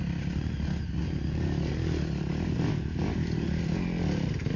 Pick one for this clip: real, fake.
real